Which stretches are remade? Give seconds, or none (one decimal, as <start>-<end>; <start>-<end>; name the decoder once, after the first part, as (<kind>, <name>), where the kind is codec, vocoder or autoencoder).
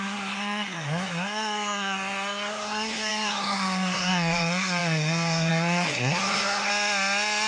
0.0-6.7 (codec, SNAC)